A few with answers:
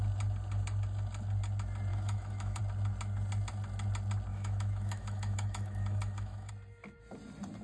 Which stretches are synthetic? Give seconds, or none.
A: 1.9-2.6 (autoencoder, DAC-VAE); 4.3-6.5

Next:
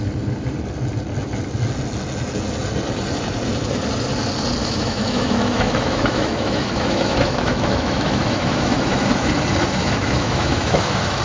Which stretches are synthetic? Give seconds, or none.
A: 4.6-9.3 (autoencoder, DAC-VAE); 9.8-11.2

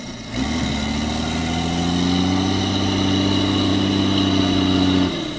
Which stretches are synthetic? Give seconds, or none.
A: none